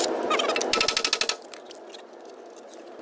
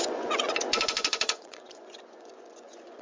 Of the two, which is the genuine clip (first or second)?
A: first